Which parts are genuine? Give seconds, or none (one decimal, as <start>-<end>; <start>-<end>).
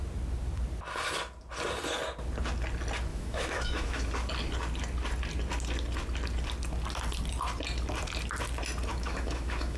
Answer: 0.0-3.1; 4.1-8.9